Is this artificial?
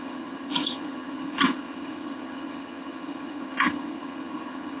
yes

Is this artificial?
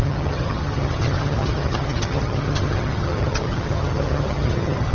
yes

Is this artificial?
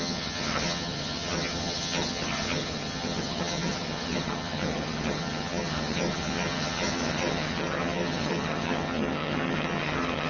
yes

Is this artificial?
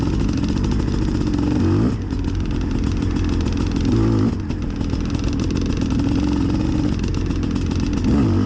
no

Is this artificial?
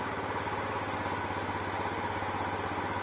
no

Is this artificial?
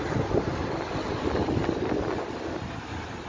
no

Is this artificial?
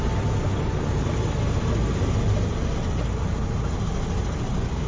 no